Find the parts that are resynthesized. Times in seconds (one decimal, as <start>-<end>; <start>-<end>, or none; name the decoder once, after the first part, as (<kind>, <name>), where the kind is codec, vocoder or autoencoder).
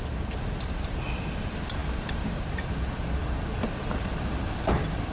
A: none